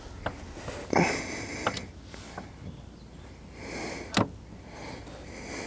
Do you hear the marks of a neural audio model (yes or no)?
no